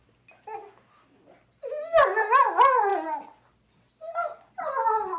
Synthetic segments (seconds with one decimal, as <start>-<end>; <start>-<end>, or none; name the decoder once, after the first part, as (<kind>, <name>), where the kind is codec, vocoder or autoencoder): none